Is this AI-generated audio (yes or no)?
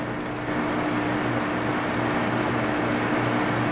no